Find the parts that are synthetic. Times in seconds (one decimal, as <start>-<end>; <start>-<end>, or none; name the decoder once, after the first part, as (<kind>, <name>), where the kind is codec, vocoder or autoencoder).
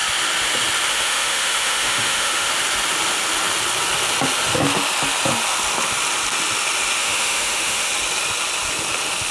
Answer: 0.9-2.5 (autoencoder, DAC-VAE); 7.0-7.9